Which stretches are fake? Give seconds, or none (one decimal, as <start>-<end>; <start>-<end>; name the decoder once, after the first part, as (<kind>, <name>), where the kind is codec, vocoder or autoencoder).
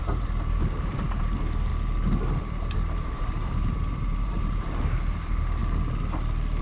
0.0-1.7 (vocoder, BigVGAN v2); 2.4-5.6